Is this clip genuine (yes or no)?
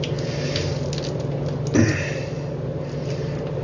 yes